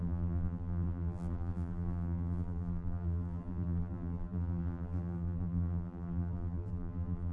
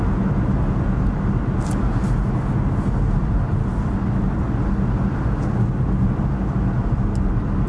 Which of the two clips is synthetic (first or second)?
first